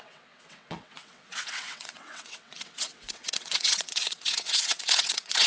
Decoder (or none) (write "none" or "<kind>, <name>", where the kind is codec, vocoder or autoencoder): vocoder, WaveNeXt